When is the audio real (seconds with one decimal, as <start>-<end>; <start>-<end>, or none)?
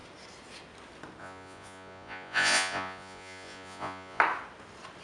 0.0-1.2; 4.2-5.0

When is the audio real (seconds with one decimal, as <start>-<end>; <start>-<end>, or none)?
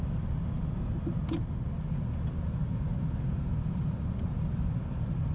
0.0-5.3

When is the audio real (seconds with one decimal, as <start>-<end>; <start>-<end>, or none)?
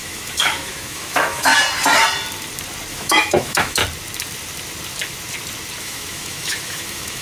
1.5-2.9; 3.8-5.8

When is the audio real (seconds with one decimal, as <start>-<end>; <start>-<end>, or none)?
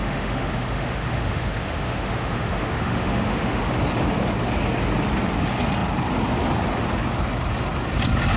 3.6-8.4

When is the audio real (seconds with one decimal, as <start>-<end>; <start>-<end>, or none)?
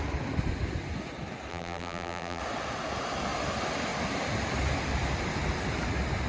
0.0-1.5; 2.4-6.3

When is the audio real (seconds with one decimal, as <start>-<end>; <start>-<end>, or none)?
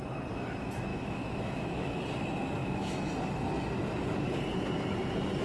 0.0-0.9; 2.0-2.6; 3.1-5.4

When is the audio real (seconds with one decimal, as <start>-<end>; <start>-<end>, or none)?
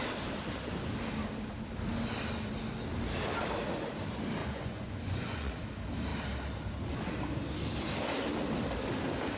0.0-4.4; 5.5-9.4